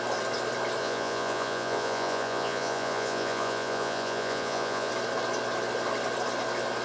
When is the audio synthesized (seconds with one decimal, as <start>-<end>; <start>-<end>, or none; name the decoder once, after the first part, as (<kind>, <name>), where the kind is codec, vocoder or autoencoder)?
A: 0.8-4.9 (vocoder, Vocos)